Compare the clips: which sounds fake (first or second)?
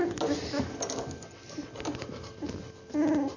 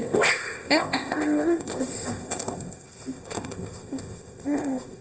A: second